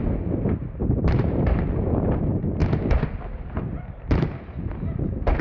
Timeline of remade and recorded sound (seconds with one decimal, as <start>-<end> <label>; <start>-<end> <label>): 0.0-0.8 recorded; 0.8-1.6 remade; 1.6-5.4 recorded